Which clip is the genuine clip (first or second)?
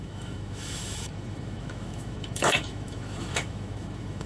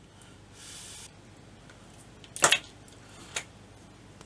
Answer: second